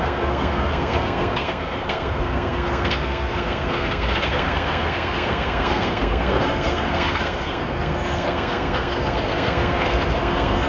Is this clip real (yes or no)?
no